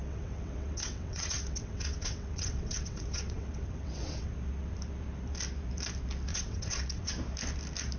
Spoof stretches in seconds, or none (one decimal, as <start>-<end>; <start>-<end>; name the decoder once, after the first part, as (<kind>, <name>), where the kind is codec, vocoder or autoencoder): 0.0-4.3 (vocoder, WaveNeXt); 6.3-7.1